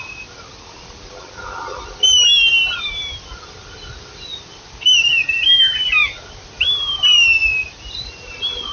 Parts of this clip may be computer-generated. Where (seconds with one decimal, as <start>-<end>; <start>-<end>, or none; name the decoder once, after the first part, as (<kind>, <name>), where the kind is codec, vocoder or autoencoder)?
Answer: none